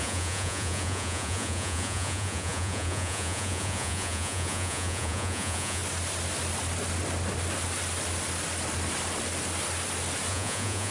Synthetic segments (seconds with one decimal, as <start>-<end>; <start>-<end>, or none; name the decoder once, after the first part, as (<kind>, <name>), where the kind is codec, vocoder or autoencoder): 0.0-5.8 (vocoder, Vocos); 10.3-10.9